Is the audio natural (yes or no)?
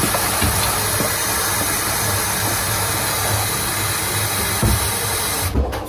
yes